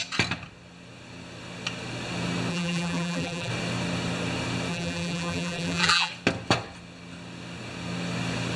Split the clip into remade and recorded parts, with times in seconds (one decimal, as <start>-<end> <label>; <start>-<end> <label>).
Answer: 0.0-2.5 recorded; 2.5-3.5 remade; 3.5-4.7 recorded; 4.7-6.1 remade; 6.1-8.6 recorded

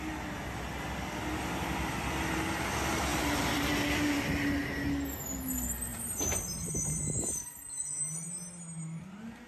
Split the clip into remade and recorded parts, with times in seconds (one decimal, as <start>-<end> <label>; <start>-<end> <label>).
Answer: 0.0-3.1 recorded; 3.1-3.7 remade; 3.7-5.9 recorded; 5.9-7.0 remade; 7.0-9.5 recorded

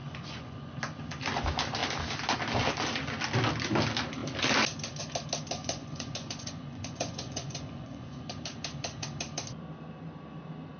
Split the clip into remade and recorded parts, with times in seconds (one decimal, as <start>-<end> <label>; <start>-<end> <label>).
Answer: 0.0-0.8 remade; 0.8-5.6 recorded; 5.6-8.4 remade; 8.4-10.8 recorded

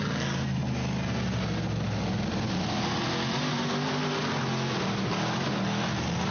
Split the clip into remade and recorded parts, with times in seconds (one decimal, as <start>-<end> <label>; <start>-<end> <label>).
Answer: 0.0-6.3 recorded